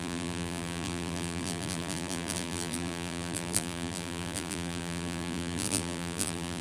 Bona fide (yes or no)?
no